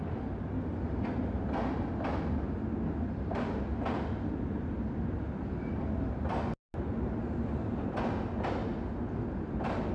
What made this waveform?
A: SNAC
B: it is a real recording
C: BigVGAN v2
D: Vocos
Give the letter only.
B